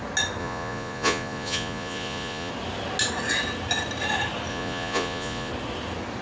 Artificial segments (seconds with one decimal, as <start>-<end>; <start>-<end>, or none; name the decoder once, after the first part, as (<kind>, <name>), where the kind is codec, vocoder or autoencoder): 0.4-2.5 (vocoder, Vocos); 4.5-5.5